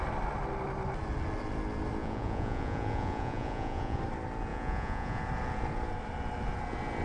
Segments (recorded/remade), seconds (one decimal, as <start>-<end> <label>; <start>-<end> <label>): 0.0-2.0 recorded; 2.0-4.0 remade; 4.0-4.5 recorded; 4.5-5.2 remade; 5.2-7.0 recorded